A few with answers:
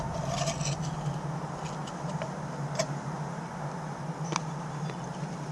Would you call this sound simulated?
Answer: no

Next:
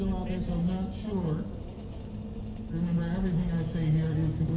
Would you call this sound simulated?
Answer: no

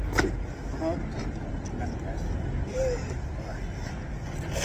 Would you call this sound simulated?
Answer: no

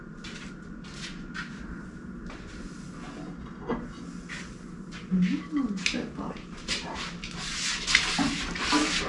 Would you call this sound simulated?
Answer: no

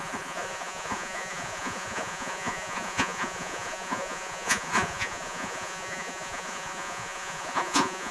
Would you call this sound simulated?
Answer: yes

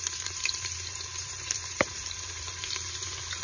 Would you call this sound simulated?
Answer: yes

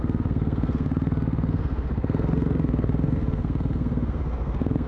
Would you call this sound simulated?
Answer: yes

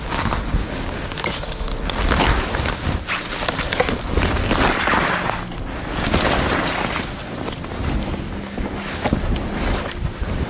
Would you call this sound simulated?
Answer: no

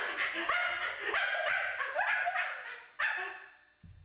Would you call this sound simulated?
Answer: no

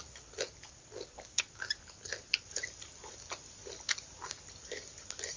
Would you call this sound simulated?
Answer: no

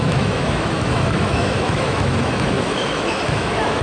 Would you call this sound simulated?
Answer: yes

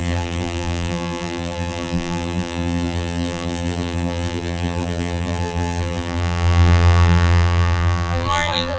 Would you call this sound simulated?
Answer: yes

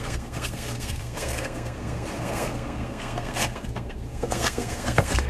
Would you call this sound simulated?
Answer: yes